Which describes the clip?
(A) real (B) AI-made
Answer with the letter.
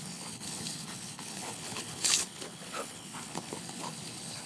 B